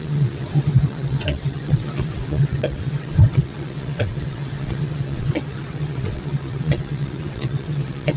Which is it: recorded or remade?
remade